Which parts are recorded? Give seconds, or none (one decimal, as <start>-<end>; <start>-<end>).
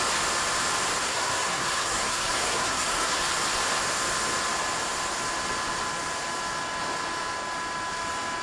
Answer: 0.0-1.0; 3.2-8.4